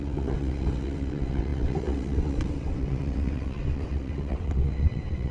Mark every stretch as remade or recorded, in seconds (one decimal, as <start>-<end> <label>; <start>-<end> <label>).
0.0-5.3 remade

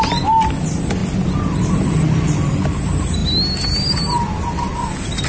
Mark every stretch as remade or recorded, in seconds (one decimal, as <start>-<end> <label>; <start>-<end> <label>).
0.0-5.3 recorded

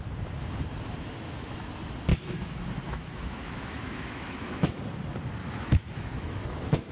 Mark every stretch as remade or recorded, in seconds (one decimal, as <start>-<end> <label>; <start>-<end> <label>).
0.0-1.1 recorded; 1.1-1.7 remade; 1.7-2.1 recorded; 2.1-4.8 remade; 4.8-5.4 recorded; 5.4-6.9 remade